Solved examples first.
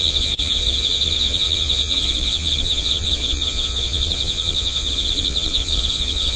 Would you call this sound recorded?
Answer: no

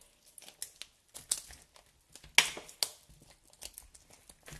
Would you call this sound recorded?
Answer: yes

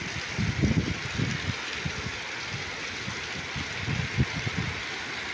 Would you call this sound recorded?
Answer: yes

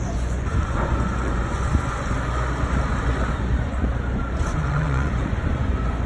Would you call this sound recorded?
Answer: no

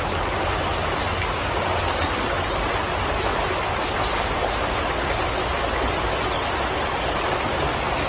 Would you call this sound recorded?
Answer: yes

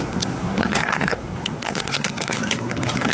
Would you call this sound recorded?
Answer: no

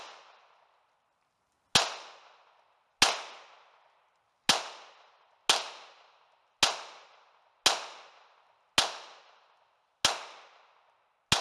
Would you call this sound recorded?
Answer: yes